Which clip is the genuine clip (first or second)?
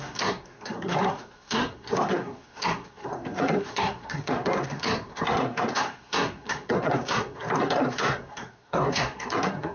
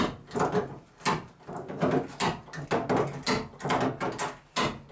second